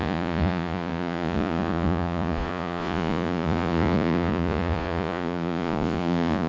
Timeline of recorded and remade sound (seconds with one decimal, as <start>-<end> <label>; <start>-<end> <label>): 0.0-6.5 remade